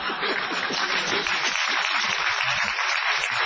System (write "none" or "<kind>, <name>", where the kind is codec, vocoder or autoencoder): none